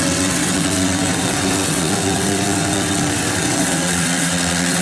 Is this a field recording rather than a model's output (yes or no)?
no